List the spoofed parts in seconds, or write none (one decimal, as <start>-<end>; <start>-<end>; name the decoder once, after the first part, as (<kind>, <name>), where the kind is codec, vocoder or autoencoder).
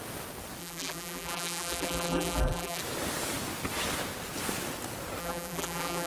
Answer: 0.6-2.8 (vocoder, BigVGAN v2); 5.2-6.1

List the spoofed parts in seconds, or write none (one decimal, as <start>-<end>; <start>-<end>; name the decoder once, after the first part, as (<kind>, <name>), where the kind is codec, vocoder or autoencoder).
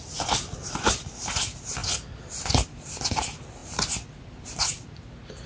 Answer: none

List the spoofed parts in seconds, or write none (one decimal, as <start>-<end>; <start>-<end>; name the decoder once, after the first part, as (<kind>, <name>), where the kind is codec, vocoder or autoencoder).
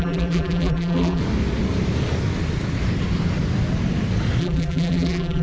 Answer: 0.0-1.2 (vocoder, BigVGAN v2); 4.4-5.4